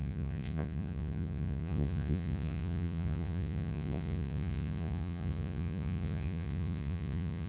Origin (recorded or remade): remade